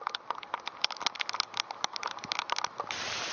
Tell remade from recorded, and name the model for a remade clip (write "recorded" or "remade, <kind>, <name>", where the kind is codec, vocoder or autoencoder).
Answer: recorded